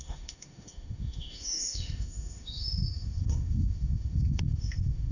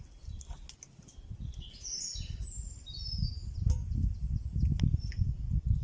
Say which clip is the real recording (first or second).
second